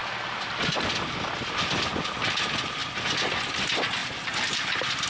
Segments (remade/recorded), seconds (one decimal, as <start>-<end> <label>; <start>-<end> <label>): 0.0-4.0 recorded; 4.0-5.1 remade